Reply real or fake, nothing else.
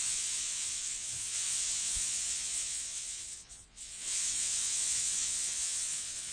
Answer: fake